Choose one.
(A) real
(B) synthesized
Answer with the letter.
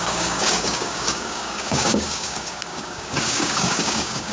B